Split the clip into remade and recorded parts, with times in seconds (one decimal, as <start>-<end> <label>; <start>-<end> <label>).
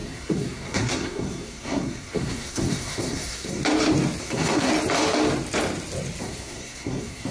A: 0.0-3.6 remade; 3.6-4.2 recorded; 4.2-4.7 remade; 4.7-6.2 recorded; 6.2-7.3 remade